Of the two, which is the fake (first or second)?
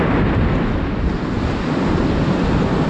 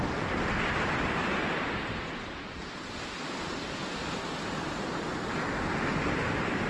second